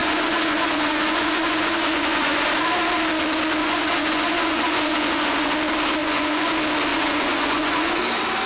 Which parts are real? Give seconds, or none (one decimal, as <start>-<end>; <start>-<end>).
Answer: 2.5-3.6; 5.5-6.0; 6.5-6.9; 8.0-8.5